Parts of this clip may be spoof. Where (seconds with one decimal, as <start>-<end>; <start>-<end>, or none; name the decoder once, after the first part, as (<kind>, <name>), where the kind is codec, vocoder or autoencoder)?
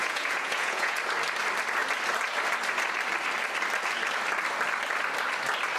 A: 0.0-1.0 (vocoder, Vocos)